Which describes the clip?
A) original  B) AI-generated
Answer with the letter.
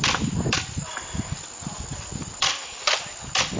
A